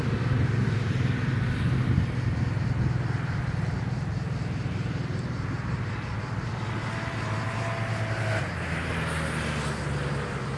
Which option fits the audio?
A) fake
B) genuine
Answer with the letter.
B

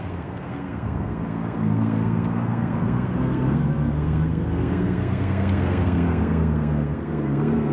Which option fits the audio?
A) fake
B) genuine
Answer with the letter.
A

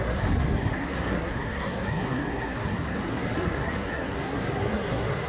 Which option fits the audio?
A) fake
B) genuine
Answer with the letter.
A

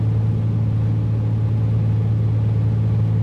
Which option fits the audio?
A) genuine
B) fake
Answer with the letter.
A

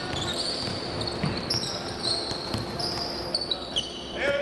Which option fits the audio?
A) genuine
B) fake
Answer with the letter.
A